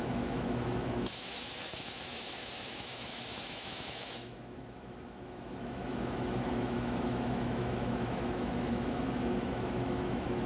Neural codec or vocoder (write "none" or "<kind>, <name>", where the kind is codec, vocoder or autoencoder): autoencoder, DAC-VAE